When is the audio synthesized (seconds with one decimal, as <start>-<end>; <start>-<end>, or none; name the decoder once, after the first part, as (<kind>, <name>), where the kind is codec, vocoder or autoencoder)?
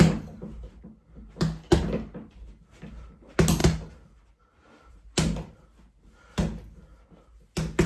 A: none